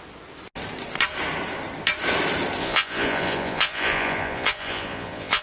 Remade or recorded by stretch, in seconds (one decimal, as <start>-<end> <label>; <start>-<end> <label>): 0.0-2.6 recorded; 2.6-5.4 remade